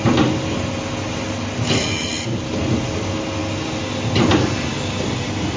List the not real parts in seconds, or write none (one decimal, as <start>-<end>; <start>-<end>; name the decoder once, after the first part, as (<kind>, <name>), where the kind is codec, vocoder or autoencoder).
none